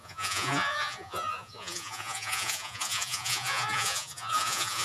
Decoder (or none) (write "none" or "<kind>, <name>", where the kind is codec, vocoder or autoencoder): vocoder, Vocos